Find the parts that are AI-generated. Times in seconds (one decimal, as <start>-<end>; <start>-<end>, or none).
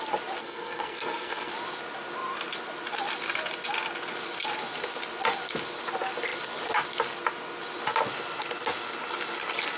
0.4-1.5